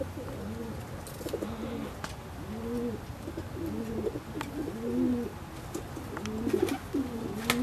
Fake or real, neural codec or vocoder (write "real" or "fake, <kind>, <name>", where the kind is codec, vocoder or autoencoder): real